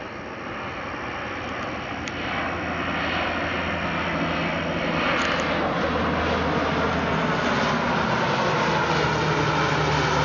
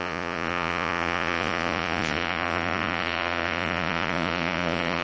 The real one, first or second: first